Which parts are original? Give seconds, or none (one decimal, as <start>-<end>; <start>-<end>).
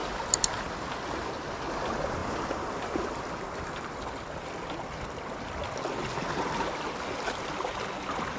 0.9-2.2; 6.2-8.4